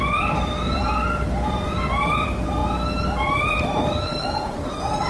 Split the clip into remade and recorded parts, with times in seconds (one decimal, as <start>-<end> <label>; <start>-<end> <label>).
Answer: 0.0-2.6 remade; 2.6-5.1 recorded